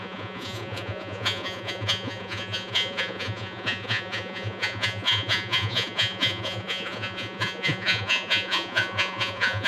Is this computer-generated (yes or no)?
yes